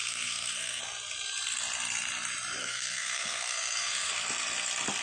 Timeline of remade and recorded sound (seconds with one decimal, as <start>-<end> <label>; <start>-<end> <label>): 0.0-0.8 remade; 0.8-2.6 recorded; 2.6-4.1 remade; 4.1-5.0 recorded